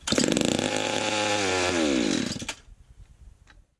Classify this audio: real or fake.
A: real